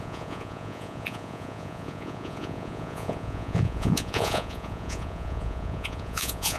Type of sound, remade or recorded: remade